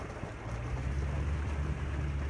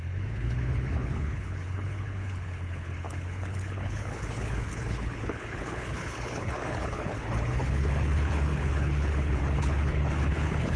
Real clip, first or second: first